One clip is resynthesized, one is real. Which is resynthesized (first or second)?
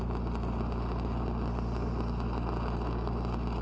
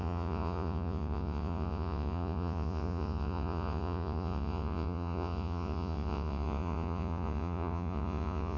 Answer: second